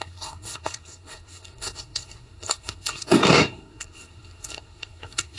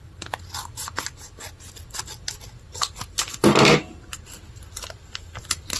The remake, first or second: first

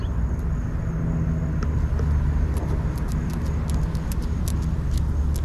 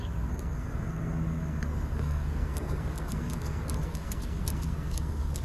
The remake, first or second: second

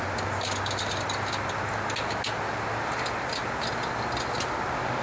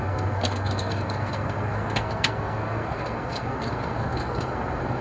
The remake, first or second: second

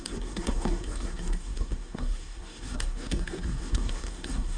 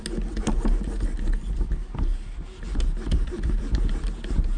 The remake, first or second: first